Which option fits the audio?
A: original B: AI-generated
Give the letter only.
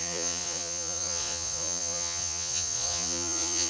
B